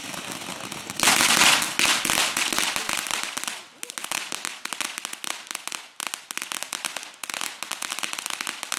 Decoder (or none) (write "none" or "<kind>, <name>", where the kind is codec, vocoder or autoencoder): none